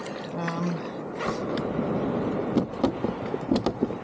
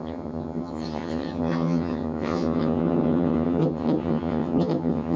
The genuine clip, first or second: first